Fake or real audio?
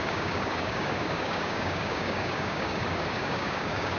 fake